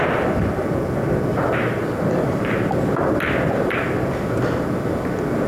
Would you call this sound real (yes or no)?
yes